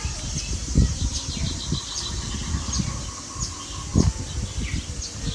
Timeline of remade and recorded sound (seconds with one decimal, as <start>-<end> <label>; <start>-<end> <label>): 0.0-5.3 recorded